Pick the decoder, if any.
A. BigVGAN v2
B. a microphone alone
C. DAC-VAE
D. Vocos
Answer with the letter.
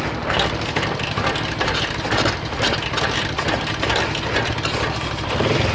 B